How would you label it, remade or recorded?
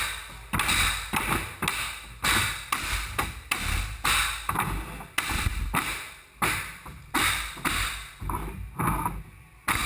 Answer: recorded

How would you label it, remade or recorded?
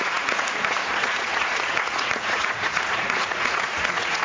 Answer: remade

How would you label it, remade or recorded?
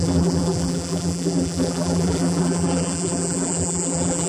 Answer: remade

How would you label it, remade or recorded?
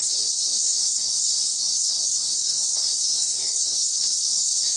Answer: remade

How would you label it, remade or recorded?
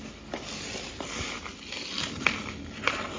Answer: recorded